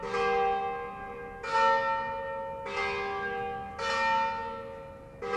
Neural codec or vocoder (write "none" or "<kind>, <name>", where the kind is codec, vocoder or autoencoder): none